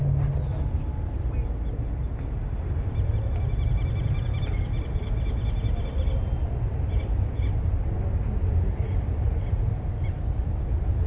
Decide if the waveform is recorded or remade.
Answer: recorded